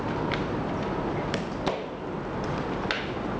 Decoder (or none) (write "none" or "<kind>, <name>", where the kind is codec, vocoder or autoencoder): none